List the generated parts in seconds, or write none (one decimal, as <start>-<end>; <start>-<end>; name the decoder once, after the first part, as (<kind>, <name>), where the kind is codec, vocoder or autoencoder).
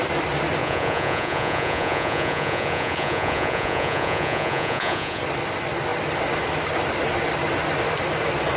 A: 0.6-5.2 (vocoder, Vocos)